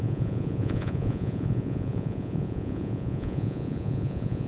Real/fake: fake